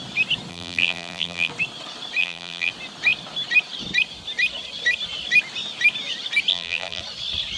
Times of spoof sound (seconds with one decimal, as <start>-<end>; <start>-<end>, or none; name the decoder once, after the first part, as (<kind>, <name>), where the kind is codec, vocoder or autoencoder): 0.5-1.5 (vocoder, BigVGAN v2); 2.2-2.7; 6.5-7.0